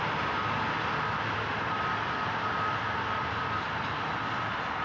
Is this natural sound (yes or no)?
yes